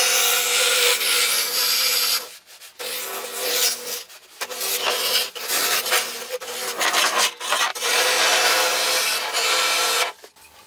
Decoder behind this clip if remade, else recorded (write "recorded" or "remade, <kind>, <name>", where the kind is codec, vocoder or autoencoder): recorded